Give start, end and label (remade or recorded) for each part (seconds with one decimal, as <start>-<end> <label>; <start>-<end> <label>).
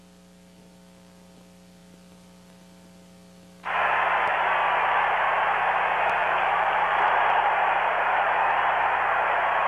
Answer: 0.0-6.2 recorded; 6.2-8.1 remade; 8.1-9.7 recorded